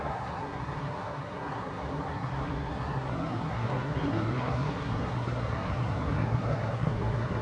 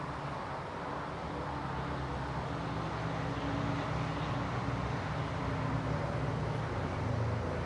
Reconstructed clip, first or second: first